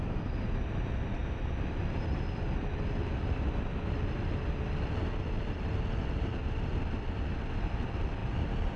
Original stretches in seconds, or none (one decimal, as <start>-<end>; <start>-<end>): 0.0-8.8